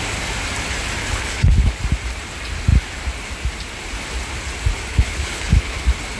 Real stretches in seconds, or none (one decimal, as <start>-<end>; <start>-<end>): 0.0-1.0; 1.8-4.9; 5.8-6.2